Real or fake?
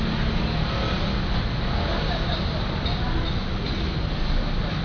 real